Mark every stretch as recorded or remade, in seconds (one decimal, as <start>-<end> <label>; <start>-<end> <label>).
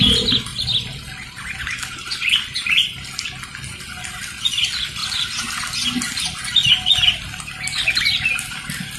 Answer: 0.0-9.0 recorded